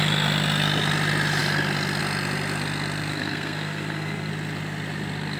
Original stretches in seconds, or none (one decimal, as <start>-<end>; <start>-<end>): 0.0-3.1; 4.3-5.4